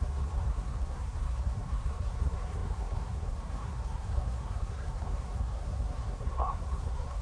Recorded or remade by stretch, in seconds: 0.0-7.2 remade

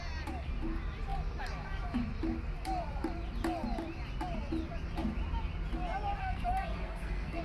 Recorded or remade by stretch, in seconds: 0.0-6.2 recorded; 6.2-7.4 remade

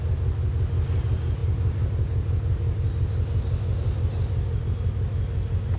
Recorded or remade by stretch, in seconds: 0.0-5.8 recorded

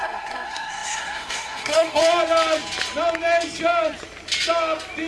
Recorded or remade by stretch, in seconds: 0.0-2.0 remade; 2.0-5.1 recorded

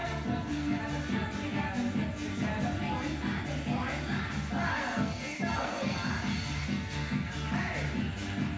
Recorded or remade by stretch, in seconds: 0.0-0.8 remade; 0.8-4.7 recorded; 4.7-6.1 remade; 6.1-6.6 recorded; 6.6-7.3 remade; 7.3-8.6 recorded

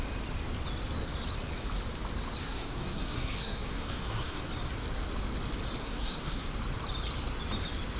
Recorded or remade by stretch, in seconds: 0.0-2.4 recorded; 2.4-4.4 remade; 4.4-5.8 recorded; 5.8-6.5 remade; 6.5-8.0 recorded